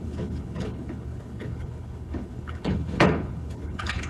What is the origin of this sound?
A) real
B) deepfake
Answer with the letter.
B